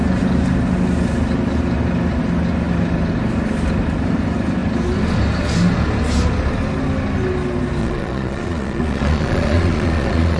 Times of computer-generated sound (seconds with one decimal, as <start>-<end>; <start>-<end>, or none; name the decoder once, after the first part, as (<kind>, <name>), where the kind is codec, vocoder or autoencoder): 7.8-10.4 (vocoder, Vocos)